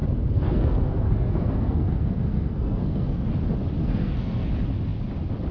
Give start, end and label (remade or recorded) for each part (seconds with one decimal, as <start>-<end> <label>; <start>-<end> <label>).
0.0-3.3 remade; 3.3-3.8 recorded; 3.8-4.5 remade; 4.5-5.5 recorded